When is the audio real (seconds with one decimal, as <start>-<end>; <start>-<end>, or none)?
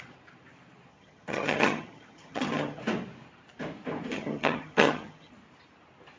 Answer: 0.0-0.9; 2.8-4.1; 5.3-6.2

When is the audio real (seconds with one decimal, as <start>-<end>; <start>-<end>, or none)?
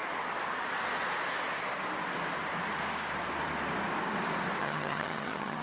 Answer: 0.0-4.6